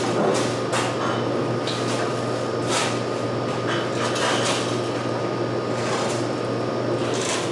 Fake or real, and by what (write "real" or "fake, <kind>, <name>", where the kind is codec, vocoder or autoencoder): real